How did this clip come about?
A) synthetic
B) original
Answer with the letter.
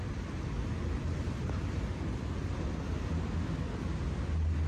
B